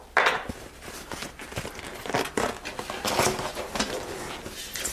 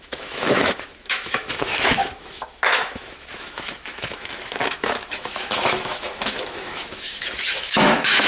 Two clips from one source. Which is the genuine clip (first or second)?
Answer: first